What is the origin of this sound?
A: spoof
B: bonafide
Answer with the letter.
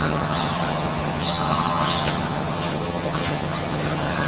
A